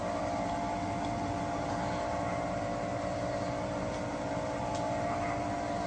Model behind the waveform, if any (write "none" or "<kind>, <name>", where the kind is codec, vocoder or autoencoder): none